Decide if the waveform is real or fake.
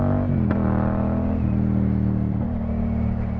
real